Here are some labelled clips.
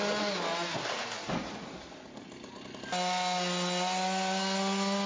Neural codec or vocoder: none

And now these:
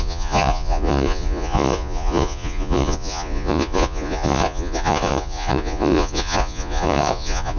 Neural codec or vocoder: vocoder, Vocos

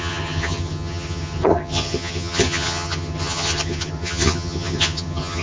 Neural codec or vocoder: vocoder, HiFi-GAN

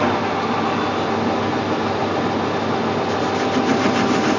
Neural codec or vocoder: none